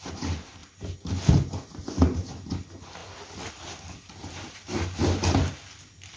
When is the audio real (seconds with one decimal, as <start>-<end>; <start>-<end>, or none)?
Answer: 0.0-6.2